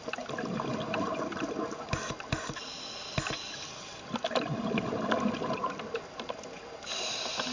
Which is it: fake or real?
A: real